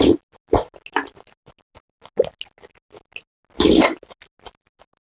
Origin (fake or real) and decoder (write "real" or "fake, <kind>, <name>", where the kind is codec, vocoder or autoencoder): real